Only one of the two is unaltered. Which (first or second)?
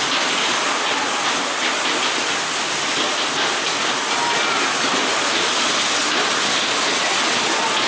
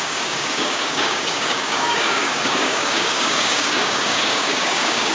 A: first